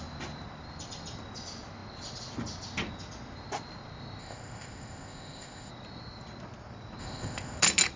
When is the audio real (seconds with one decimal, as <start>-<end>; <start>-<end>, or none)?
0.0-4.2; 5.7-7.0; 7.6-8.0